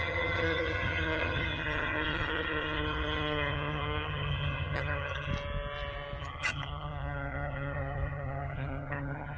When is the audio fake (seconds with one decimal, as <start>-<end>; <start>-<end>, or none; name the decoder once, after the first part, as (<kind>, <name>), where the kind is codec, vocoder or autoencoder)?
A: 0.0-5.3 (vocoder, HiFi-GAN); 6.2-9.4